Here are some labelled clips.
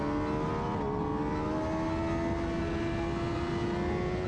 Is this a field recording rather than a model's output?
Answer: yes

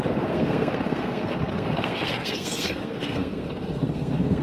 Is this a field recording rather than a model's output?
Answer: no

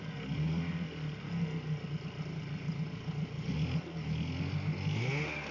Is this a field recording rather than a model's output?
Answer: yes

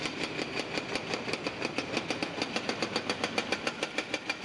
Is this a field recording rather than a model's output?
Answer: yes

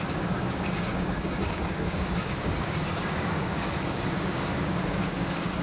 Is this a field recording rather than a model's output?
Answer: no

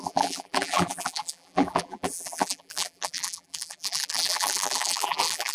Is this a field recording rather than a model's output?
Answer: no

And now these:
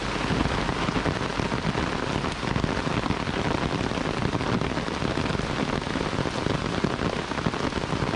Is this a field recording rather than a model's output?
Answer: yes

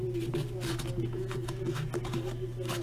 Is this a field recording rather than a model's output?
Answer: yes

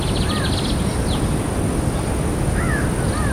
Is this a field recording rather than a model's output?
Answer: yes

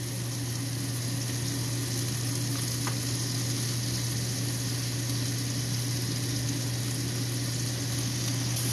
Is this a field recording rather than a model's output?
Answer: yes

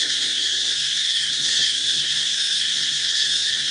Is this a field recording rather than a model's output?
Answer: no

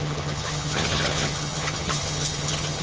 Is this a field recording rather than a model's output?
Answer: no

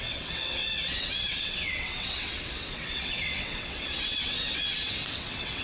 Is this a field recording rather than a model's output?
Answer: no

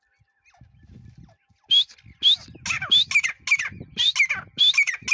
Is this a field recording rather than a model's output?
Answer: yes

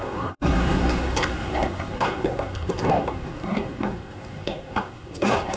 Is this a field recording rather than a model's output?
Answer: no